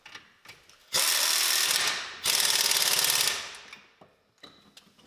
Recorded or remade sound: recorded